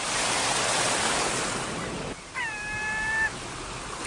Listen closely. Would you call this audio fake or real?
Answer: real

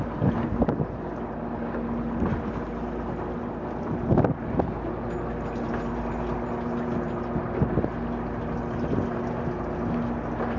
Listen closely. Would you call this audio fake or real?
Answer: real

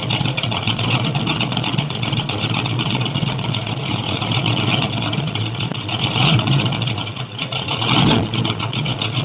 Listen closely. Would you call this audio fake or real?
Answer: fake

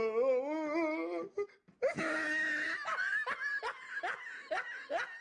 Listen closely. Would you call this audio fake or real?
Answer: real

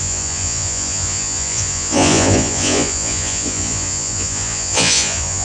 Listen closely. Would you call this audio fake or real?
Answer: fake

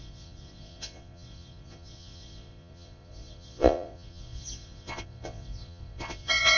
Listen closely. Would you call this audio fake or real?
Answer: fake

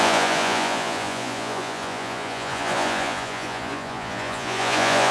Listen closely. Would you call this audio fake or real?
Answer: fake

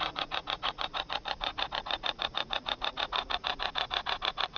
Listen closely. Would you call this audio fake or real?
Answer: fake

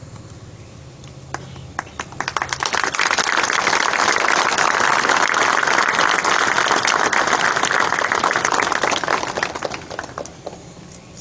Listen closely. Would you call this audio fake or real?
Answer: real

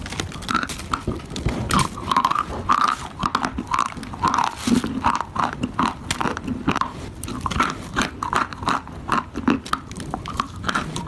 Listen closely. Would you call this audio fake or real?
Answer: real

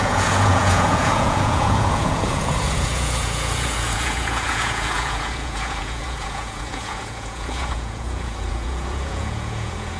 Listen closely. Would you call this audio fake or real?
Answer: fake